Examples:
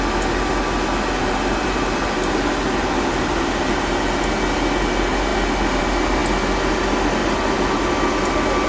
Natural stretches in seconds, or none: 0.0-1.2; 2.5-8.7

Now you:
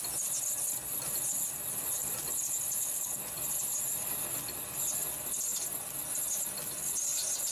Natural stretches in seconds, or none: 0.0-2.0; 3.2-7.5

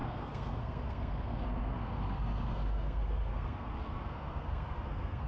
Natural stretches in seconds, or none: none

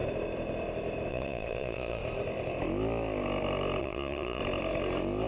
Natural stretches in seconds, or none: 0.0-1.1; 2.0-3.8; 4.4-5.3